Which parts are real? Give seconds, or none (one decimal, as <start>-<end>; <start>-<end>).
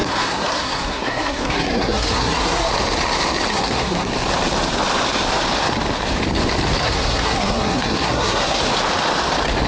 2.7-3.5; 4.1-6.8; 8.6-9.7